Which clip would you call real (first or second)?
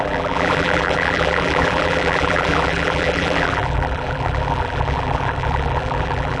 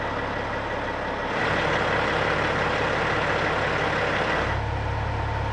second